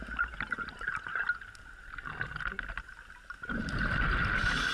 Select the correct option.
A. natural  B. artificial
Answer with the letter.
A